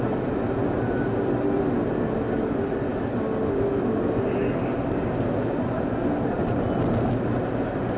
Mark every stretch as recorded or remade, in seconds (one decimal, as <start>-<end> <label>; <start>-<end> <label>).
0.0-8.0 recorded